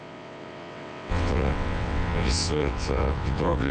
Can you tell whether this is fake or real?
fake